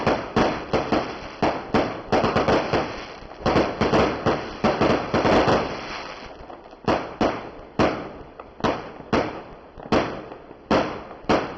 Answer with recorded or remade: recorded